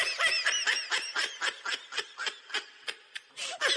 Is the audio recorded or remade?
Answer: recorded